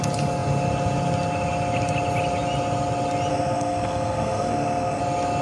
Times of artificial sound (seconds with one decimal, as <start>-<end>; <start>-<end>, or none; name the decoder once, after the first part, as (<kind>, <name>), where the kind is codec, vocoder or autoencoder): 3.3-5.0 (codec, SNAC)